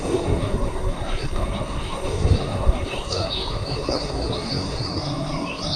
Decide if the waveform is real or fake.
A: fake